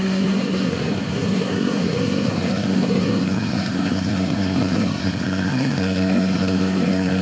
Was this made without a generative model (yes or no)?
no